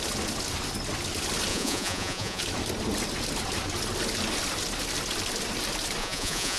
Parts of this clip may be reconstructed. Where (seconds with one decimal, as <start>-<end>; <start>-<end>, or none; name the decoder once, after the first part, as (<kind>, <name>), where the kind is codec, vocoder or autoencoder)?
1.5-2.4 (vocoder, Vocos); 6.0-6.6